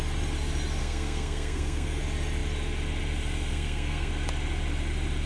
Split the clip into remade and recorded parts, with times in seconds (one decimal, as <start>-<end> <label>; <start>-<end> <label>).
0.0-0.8 recorded; 0.8-2.0 remade; 2.0-3.5 recorded; 3.5-4.1 remade; 4.1-5.3 recorded